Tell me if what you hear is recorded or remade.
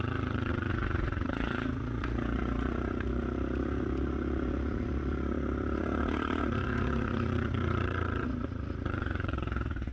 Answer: remade